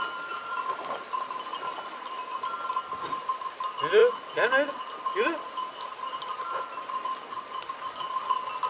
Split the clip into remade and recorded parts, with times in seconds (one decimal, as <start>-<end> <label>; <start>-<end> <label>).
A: 0.0-8.7 recorded

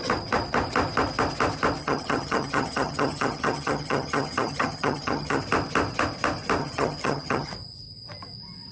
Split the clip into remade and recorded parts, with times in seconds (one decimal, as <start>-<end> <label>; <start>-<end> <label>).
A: 0.0-1.8 recorded; 1.8-5.4 remade; 5.4-6.6 recorded; 6.6-7.5 remade; 7.5-8.7 recorded

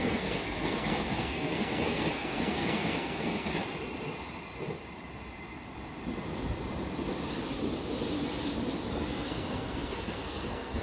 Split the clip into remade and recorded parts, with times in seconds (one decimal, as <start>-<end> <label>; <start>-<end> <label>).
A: 0.0-3.6 remade; 3.6-8.9 recorded; 8.9-10.8 remade

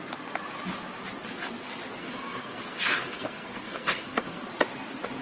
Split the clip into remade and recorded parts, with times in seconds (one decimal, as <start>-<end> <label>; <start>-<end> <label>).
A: 0.0-2.0 recorded; 2.0-4.4 remade; 4.4-5.2 recorded

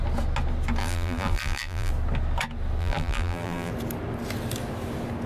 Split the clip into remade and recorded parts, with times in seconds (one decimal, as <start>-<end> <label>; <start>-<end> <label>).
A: 0.0-0.8 recorded; 0.8-1.9 remade; 1.9-2.8 recorded; 2.8-3.7 remade; 3.7-5.3 recorded

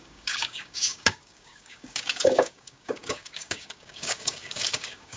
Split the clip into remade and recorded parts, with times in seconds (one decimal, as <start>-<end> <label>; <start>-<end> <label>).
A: 0.0-5.2 remade

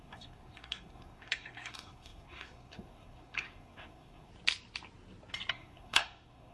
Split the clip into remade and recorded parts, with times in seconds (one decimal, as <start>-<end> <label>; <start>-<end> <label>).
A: 0.0-4.3 remade; 4.3-5.5 recorded; 5.5-6.5 remade